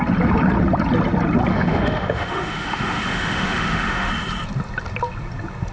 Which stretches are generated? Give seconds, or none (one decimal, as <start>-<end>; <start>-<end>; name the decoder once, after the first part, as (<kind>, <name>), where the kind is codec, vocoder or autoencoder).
1.5-4.1 (autoencoder, DAC-VAE)